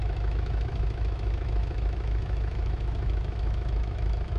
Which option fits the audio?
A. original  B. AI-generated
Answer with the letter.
B